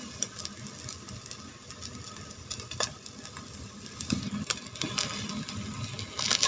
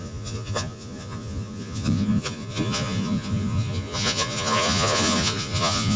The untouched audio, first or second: first